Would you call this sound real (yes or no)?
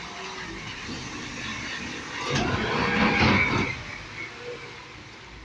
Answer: yes